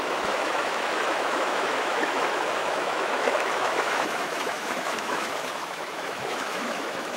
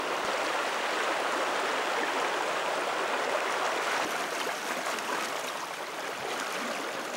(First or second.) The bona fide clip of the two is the second